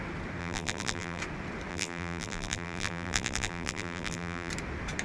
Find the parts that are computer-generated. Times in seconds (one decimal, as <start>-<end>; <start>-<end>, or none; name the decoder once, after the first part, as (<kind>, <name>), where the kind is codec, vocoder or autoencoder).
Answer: 0.4-1.2 (vocoder, BigVGAN v2); 1.7-4.5